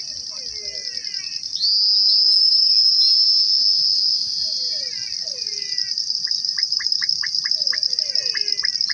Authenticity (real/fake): real